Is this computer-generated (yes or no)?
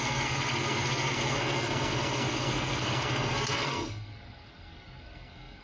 yes